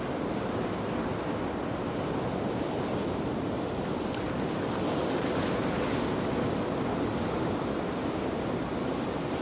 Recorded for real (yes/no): yes